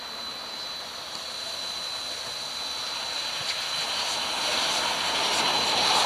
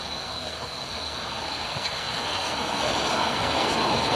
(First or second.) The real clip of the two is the first